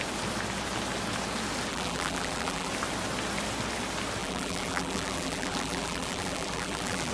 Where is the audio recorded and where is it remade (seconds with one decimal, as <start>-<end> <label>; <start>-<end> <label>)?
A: 0.0-1.7 recorded; 1.7-2.7 remade; 2.7-4.2 recorded; 4.2-7.1 remade